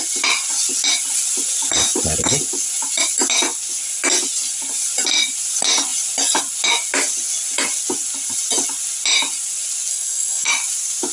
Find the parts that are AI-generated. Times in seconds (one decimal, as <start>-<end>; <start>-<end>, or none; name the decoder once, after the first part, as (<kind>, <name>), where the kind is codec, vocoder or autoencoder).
9.9-10.5 (codec, SNAC)